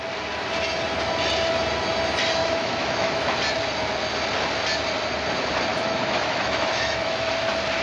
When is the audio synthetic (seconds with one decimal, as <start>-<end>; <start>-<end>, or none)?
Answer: 2.4-3.4; 5.7-7.3